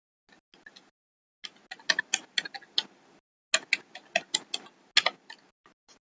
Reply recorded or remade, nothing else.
recorded